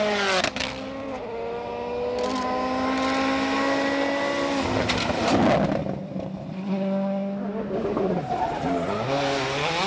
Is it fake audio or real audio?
real